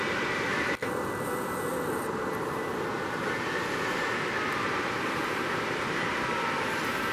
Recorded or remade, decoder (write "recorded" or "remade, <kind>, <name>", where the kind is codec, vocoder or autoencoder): recorded